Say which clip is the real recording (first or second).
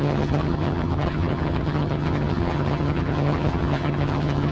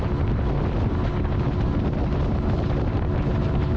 second